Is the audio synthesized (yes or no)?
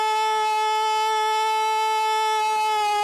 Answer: no